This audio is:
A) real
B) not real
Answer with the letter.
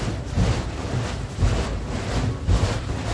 A